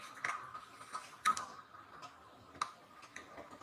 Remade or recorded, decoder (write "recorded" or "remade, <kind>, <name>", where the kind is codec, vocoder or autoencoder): recorded